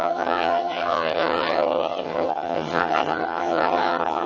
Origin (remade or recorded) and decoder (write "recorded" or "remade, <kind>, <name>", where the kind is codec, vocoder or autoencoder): remade, vocoder, HiFi-GAN